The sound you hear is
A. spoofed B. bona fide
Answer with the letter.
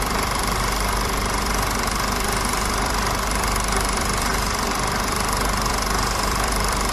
A